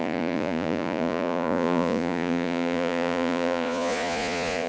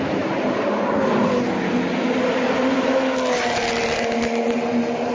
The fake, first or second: first